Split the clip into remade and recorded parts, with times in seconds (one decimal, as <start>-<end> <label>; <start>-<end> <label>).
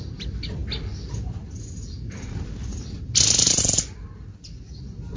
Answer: 0.0-5.2 recorded